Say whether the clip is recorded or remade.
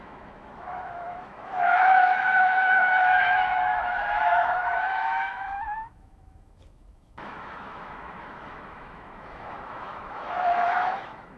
remade